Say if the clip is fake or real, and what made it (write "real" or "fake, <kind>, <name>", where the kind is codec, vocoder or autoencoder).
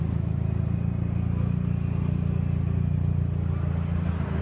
real